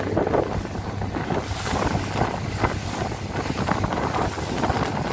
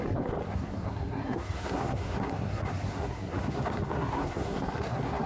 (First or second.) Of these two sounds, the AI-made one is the second